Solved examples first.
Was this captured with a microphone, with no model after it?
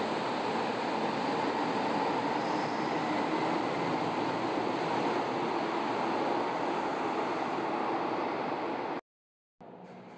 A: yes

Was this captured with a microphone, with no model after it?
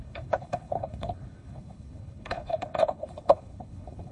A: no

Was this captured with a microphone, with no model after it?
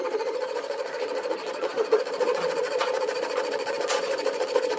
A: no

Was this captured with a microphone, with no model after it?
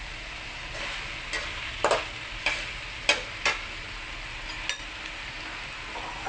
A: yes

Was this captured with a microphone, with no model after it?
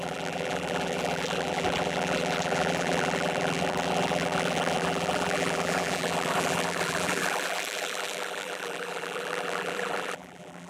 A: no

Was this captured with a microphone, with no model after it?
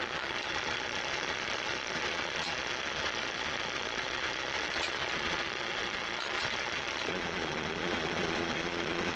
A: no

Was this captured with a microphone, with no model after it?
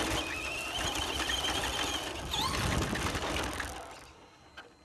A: yes